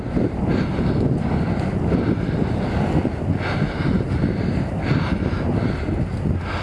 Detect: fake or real real